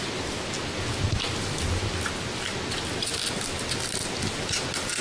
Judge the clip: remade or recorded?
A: recorded